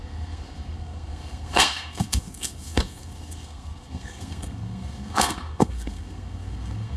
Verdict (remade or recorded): remade